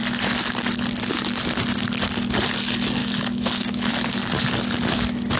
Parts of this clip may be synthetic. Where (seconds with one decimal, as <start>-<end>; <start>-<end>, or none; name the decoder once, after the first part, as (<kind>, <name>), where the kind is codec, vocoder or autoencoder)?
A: 3.0-3.9 (autoencoder, DAC-VAE)